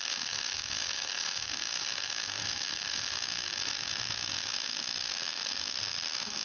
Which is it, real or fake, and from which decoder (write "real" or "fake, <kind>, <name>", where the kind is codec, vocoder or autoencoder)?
fake, autoencoder, DAC-VAE